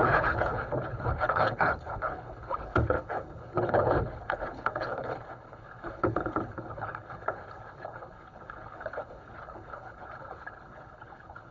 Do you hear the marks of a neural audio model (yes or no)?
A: yes